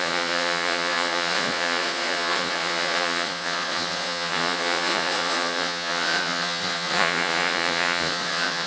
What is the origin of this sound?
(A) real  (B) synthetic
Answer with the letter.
B